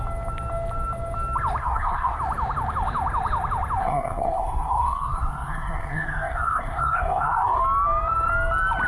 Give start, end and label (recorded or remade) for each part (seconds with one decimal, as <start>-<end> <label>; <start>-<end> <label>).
0.0-1.6 recorded; 1.6-2.2 remade; 2.2-3.8 recorded; 3.8-7.6 remade; 7.6-8.9 recorded